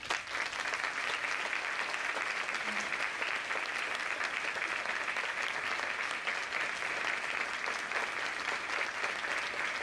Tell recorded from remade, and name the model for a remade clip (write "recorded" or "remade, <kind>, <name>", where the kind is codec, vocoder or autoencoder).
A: recorded